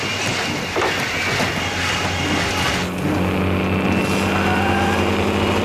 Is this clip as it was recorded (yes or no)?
yes